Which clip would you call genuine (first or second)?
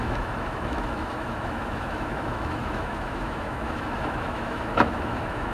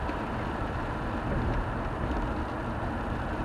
second